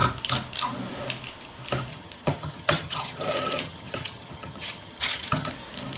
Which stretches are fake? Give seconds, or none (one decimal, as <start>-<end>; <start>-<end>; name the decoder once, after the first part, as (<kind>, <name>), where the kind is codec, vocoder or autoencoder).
1.9-5.5 (vocoder, HiFi-GAN)